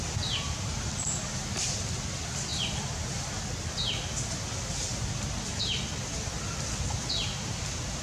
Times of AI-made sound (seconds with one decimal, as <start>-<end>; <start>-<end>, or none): 2.5-3.3